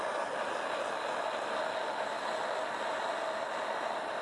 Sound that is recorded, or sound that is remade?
recorded